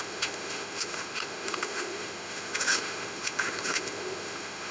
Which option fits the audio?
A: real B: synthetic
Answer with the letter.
B